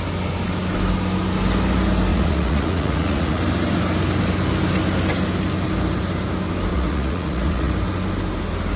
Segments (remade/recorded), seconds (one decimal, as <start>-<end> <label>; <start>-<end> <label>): 0.0-2.1 recorded; 2.1-3.4 remade; 3.4-6.7 recorded; 6.7-7.7 remade; 7.7-8.8 recorded